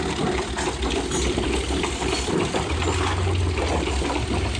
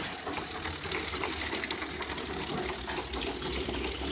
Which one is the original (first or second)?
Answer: second